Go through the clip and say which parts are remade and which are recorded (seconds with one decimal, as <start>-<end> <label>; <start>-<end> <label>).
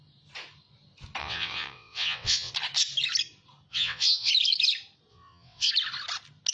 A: 0.0-1.2 recorded; 1.2-2.5 remade; 2.5-3.7 recorded; 3.7-4.3 remade; 4.3-5.1 recorded; 5.1-5.7 remade; 5.7-6.5 recorded